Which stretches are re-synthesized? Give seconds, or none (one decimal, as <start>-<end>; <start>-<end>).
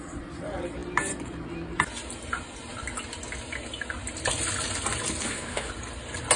5.2-5.7